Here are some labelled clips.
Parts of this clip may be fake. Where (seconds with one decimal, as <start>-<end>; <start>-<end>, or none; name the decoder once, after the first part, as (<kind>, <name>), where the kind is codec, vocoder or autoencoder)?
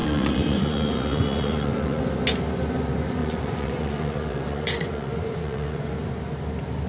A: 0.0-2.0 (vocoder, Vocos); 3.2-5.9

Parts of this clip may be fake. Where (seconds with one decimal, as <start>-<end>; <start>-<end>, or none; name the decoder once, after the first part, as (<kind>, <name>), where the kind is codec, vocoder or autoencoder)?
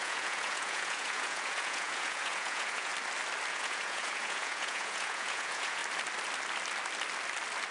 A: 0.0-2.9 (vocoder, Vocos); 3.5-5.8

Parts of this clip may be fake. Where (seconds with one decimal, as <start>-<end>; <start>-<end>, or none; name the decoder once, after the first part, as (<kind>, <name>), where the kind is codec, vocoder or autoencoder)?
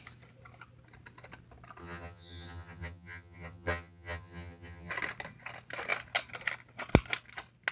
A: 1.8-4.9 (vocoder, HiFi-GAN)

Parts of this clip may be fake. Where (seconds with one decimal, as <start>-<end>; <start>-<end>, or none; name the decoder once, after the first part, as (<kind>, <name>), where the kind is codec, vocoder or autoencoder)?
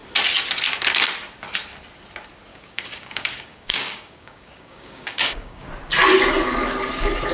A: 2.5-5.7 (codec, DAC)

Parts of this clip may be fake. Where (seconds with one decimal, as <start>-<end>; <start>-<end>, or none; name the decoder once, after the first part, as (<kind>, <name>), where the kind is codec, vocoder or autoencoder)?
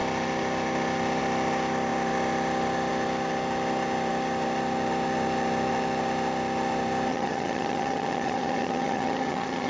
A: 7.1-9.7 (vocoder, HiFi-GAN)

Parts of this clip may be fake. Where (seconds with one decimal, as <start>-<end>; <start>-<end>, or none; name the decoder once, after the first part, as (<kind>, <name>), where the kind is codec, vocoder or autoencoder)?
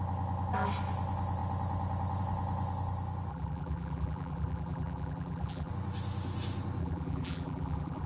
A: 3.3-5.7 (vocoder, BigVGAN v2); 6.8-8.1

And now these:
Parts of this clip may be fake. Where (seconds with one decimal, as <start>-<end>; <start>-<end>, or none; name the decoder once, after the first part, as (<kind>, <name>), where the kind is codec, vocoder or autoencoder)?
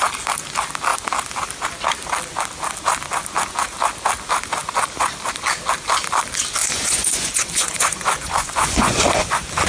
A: 6.6-9.7 (vocoder, Vocos)